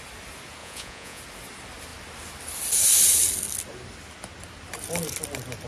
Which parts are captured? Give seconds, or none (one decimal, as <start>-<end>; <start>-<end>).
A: 0.0-0.6; 1.2-5.7